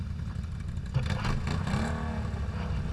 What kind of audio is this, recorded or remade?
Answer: recorded